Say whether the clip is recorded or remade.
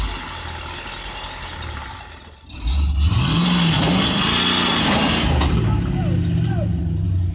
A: recorded